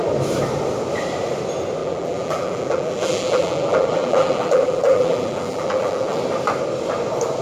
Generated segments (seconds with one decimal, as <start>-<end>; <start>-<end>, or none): 1.8-6.2